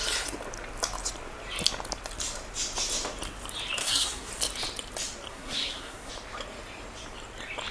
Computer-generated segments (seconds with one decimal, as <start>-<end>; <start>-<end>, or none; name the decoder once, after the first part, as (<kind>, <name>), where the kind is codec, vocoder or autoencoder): 3.8-4.3 (codec, SNAC); 5.3-6.1